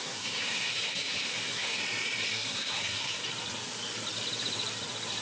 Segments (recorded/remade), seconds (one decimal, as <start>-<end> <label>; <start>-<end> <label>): 0.0-1.8 remade; 1.8-2.3 recorded; 2.3-3.2 remade; 3.2-5.2 recorded